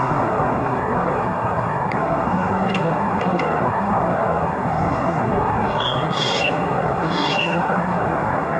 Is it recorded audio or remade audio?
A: remade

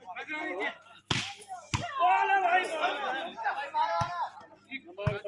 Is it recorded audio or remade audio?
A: recorded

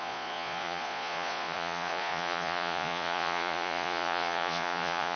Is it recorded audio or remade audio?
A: remade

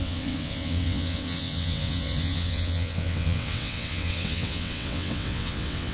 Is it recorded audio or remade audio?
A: remade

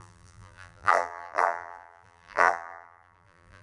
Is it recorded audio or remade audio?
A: remade